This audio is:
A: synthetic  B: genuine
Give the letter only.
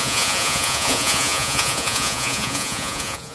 A